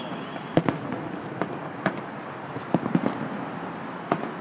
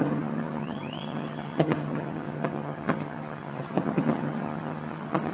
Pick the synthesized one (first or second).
second